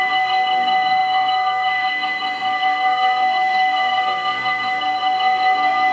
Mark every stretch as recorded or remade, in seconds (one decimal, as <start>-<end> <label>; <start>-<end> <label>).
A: 0.0-5.9 remade